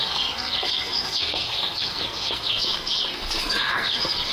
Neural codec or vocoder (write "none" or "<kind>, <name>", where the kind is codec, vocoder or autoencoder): codec, SNAC